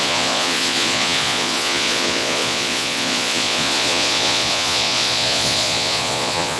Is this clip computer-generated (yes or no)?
yes